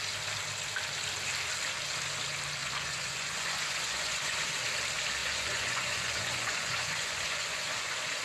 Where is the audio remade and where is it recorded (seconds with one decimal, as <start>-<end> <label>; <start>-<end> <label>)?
0.0-2.6 recorded; 2.6-4.4 remade; 4.4-5.2 recorded; 5.2-8.2 remade